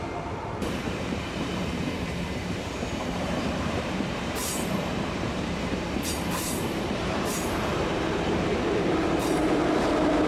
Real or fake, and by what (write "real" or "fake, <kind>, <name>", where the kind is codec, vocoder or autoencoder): fake, vocoder, BigVGAN v2